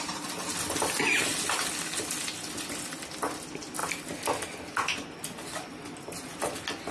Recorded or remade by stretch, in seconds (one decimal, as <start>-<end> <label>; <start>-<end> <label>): 0.0-6.9 recorded

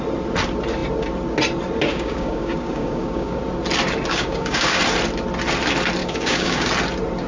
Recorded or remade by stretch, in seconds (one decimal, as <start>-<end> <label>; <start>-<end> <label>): 0.0-1.9 recorded; 1.9-3.4 remade; 3.4-4.1 recorded; 4.1-4.8 remade; 4.8-6.0 recorded; 6.0-6.7 remade; 6.7-7.3 recorded

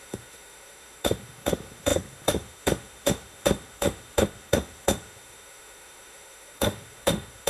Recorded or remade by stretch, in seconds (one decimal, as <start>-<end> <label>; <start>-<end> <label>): 0.0-7.5 remade

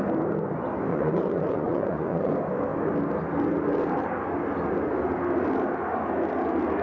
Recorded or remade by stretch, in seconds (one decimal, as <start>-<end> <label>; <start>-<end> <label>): 0.0-0.9 recorded; 0.9-2.3 remade; 2.3-6.8 recorded

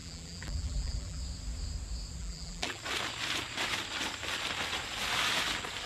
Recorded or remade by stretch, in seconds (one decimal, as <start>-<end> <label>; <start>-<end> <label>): 0.0-1.2 remade; 1.2-2.2 recorded; 2.2-2.8 remade; 2.8-5.9 recorded

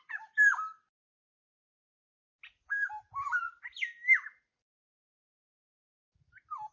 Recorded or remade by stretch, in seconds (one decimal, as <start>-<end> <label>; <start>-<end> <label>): 0.0-6.7 recorded

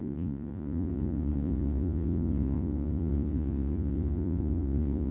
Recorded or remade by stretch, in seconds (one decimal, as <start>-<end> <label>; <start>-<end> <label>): 0.0-5.1 remade

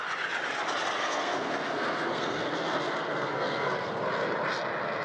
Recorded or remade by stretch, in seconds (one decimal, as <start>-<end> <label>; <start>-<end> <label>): 0.0-1.0 recorded; 1.0-4.0 remade; 4.0-5.0 recorded